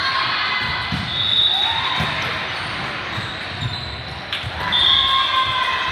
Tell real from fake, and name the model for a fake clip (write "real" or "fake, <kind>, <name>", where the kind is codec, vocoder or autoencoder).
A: real